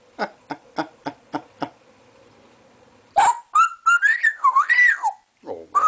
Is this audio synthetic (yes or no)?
no